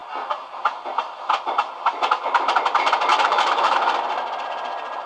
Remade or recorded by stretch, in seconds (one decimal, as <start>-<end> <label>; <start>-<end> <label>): 0.0-3.1 recorded; 3.1-3.9 remade; 3.9-5.1 recorded

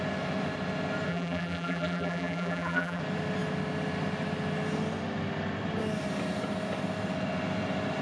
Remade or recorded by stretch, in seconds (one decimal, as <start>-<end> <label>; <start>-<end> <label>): 0.0-1.1 recorded; 1.1-3.0 remade; 3.0-8.0 recorded

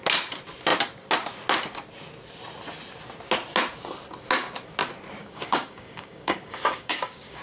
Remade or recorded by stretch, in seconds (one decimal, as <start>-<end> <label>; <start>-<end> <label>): 0.0-5.2 recorded; 5.2-7.4 remade

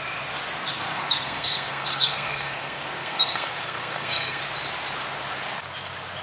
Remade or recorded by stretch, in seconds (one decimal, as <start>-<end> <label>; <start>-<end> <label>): 0.0-0.7 recorded; 0.7-4.4 remade; 4.4-6.2 recorded

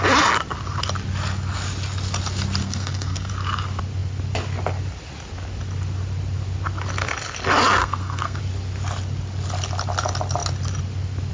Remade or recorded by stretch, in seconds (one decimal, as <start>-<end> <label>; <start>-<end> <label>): 0.0-2.6 recorded; 2.6-3.3 remade; 3.3-7.8 recorded; 7.8-8.4 remade; 8.4-11.3 recorded